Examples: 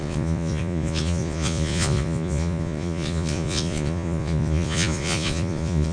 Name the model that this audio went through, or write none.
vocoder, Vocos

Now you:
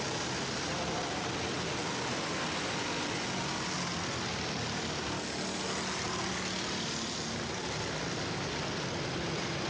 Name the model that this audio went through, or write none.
none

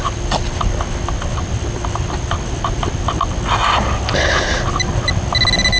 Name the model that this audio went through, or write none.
none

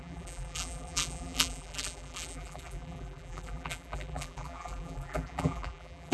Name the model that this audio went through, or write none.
vocoder, BigVGAN v2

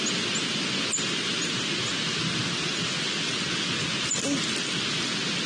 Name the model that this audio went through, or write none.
none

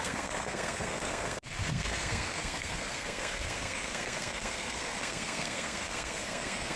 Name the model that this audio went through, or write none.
codec, SNAC